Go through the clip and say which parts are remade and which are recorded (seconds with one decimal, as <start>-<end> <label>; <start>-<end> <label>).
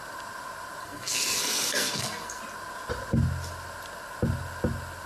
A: 0.0-0.8 recorded; 0.8-2.4 remade; 2.4-5.1 recorded